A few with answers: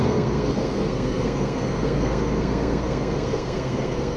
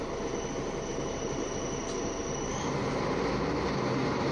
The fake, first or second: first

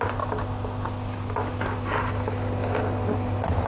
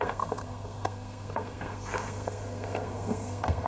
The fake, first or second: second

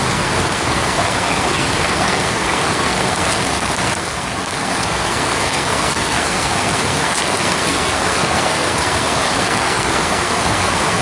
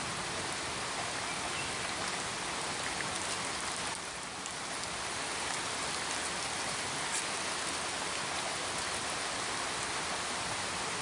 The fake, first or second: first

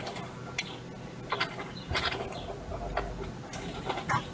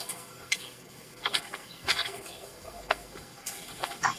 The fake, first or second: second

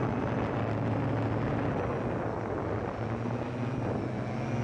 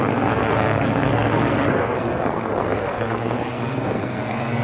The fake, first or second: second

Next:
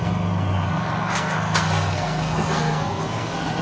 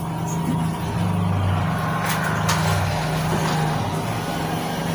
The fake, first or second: first